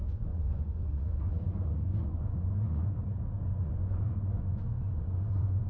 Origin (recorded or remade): remade